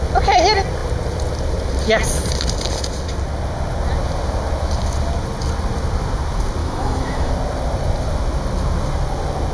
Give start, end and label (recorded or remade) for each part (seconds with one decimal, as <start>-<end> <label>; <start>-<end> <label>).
0.0-6.6 recorded; 6.6-7.3 remade; 7.3-9.5 recorded